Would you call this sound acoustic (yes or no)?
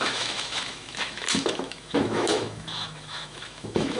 no